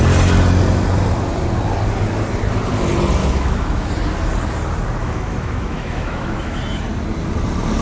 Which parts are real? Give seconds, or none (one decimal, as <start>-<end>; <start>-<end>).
0.0-3.2; 3.9-5.0; 6.6-7.8